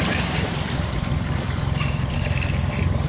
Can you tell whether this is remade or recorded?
remade